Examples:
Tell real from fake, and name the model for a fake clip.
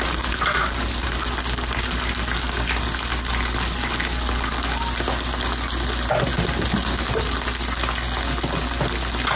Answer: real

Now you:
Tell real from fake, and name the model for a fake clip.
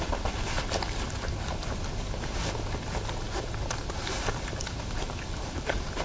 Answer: real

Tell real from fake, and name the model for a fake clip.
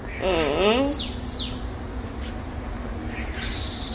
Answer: real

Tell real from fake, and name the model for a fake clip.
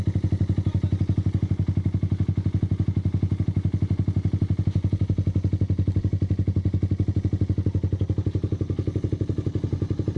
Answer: real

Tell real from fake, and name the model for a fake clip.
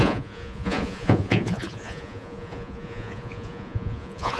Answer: fake, vocoder, Vocos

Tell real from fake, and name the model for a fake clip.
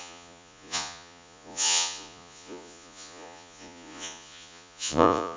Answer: fake, vocoder, Vocos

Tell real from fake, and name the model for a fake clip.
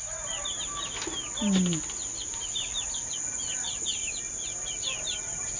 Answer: real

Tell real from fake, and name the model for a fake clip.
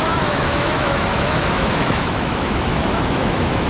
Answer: fake, autoencoder, DAC-VAE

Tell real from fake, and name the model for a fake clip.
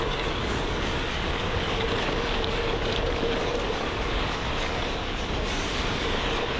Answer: fake, codec, DAC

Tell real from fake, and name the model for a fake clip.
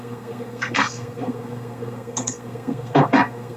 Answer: fake, codec, SNAC